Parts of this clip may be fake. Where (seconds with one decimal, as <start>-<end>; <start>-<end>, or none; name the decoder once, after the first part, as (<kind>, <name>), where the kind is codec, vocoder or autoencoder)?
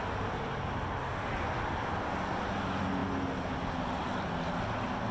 none